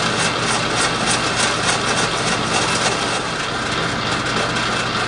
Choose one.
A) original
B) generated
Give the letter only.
A